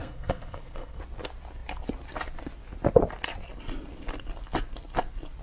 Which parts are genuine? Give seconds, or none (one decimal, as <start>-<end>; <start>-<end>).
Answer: 1.0-5.4